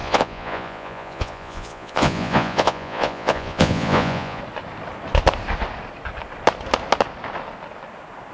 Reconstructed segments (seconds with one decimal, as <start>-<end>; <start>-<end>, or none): 0.0-4.4